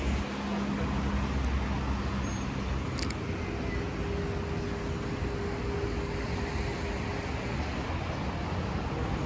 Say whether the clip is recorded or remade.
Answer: recorded